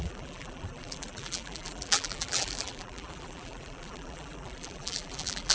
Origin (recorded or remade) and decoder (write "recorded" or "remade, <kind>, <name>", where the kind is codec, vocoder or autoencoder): remade, vocoder, BigVGAN v2